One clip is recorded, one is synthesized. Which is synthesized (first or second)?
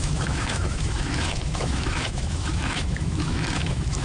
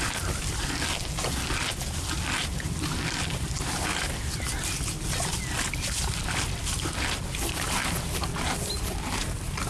first